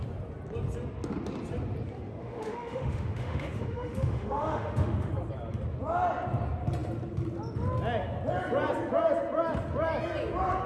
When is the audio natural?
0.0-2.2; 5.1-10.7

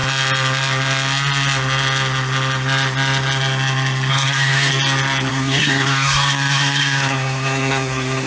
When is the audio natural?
0.0-4.1; 4.7-5.3

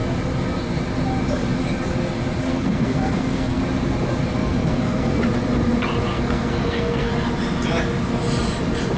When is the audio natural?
0.0-2.5; 3.6-4.4; 5.2-6.1; 7.1-9.0

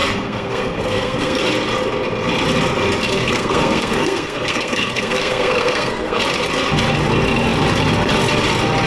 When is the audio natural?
1.4-3.2; 6.2-8.9

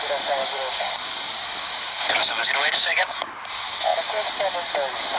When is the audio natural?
0.0-0.4; 3.5-5.2

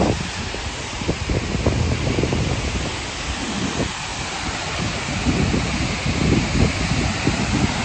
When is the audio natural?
0.0-4.1; 5.1-7.8